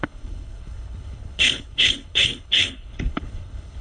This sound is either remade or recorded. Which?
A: remade